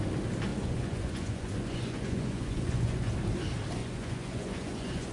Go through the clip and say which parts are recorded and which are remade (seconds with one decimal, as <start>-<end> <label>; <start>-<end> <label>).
0.0-0.5 recorded; 0.5-3.1 remade; 3.1-3.8 recorded; 3.8-5.1 remade